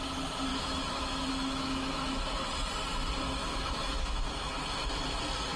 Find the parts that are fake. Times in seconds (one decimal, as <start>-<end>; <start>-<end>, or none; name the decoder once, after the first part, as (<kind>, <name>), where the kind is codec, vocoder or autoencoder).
0.5-2.4 (autoencoder, DAC-VAE); 3.4-5.0